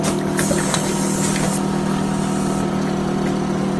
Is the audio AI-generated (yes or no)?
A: no